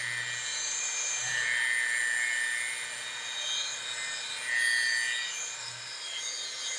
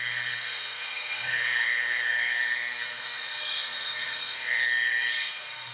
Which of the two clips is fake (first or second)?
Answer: second